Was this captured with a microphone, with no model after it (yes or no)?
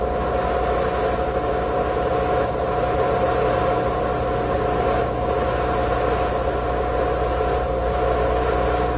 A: yes